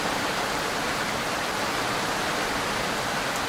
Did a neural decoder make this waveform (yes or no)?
yes